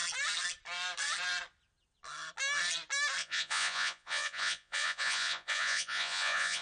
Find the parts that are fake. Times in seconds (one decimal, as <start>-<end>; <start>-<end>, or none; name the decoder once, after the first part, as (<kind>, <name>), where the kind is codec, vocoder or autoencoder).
3.2-6.6 (vocoder, Vocos)